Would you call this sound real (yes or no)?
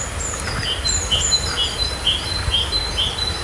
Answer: yes